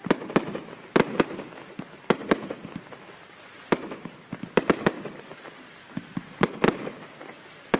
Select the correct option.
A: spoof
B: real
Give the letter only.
B